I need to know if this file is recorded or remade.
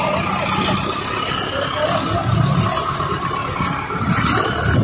recorded